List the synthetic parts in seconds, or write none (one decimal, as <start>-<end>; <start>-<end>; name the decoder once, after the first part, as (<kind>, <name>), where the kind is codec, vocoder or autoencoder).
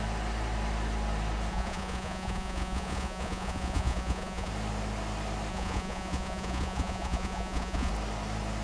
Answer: 1.5-4.5 (vocoder, Vocos); 5.5-7.9